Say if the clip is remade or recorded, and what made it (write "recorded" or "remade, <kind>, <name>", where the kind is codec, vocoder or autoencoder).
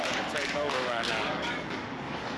remade, codec, DAC